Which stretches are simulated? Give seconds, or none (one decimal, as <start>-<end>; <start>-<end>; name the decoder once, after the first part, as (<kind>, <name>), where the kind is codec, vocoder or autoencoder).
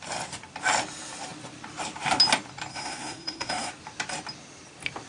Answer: 2.7-3.7 (codec, SNAC)